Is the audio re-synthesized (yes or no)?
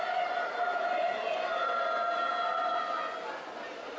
no